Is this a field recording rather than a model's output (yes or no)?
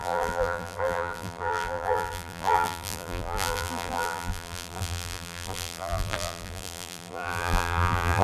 no